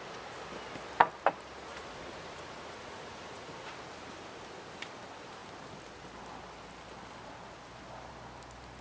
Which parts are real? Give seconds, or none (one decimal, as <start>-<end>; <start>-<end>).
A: 0.0-1.7; 3.7-8.8